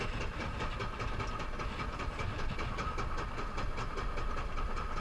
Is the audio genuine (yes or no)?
yes